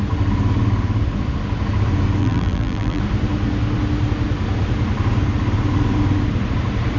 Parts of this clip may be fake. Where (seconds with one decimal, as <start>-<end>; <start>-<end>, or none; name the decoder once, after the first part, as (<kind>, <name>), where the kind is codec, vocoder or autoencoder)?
2.2-3.0 (vocoder, BigVGAN v2)